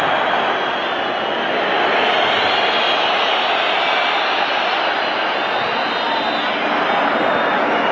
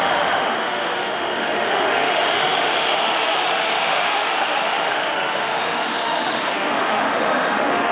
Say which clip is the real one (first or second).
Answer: first